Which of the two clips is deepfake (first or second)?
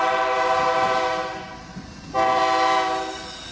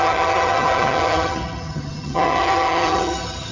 second